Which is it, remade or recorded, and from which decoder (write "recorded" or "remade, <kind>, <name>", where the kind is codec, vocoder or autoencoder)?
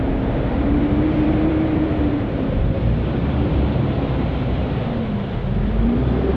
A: remade, vocoder, BigVGAN v2